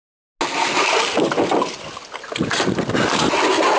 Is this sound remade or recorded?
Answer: recorded